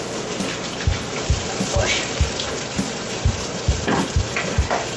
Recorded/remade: recorded